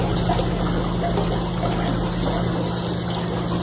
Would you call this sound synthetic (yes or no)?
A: no